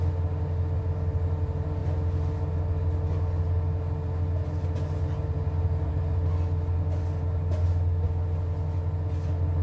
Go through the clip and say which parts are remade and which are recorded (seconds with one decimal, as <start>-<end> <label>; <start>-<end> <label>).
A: 0.0-9.6 recorded